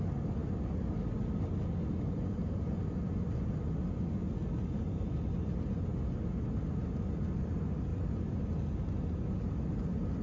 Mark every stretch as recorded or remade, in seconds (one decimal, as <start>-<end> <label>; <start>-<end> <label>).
0.0-10.2 recorded